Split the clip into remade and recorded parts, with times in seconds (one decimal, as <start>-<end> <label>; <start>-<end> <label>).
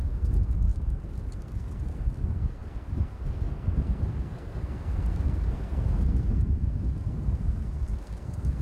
0.0-8.6 remade